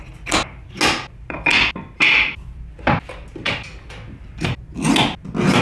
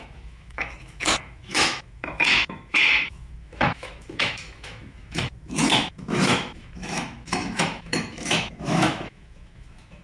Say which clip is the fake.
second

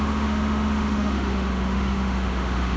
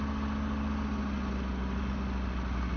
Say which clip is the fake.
first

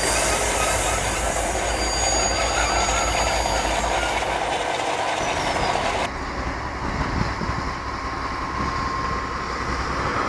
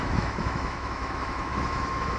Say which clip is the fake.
second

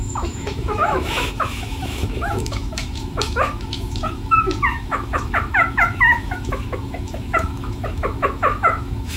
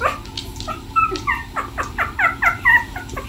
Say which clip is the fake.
first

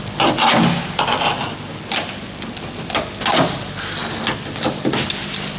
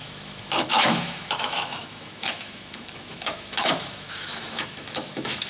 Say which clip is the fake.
second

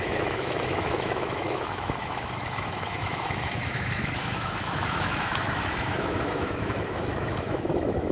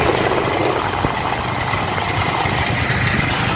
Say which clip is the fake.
first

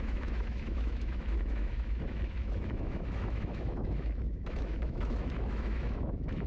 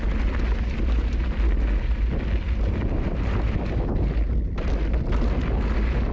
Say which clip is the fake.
first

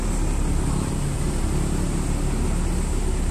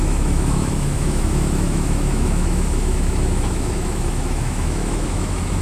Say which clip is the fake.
second